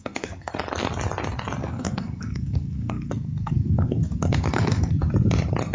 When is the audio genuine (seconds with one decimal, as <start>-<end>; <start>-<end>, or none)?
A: 0.5-1.6; 5.0-5.7